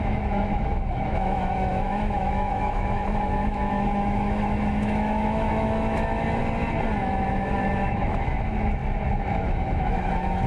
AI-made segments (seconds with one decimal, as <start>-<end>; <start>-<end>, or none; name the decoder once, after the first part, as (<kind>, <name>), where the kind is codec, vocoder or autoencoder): 0.0-6.4 (autoencoder, DAC-VAE); 7.0-8.8; 9.3-10.5